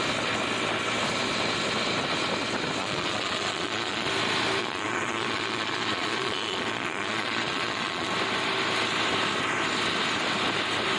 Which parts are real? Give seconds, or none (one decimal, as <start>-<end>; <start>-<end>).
0.0-2.8; 4.1-4.6; 8.1-11.0